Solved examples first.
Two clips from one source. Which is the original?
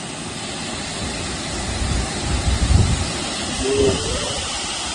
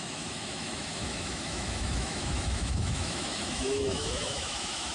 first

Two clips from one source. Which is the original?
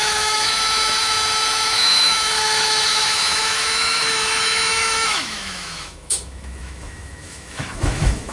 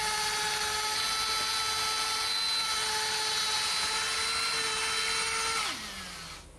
second